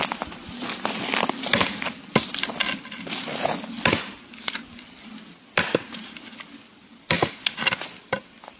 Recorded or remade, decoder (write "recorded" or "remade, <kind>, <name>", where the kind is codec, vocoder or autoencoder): recorded